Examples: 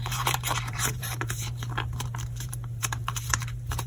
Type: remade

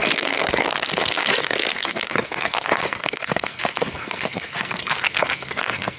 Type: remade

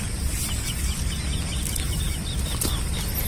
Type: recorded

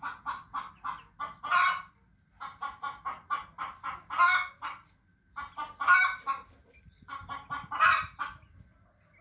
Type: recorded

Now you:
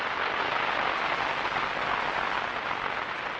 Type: recorded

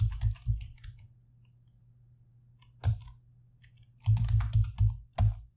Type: recorded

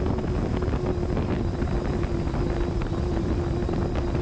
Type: recorded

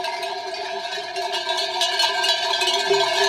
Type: recorded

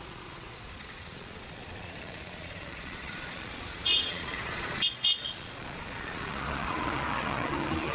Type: remade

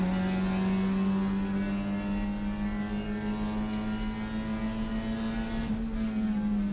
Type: recorded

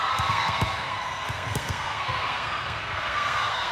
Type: remade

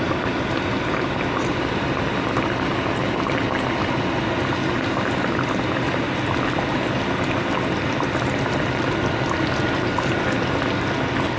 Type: recorded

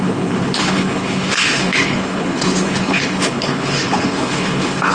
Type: remade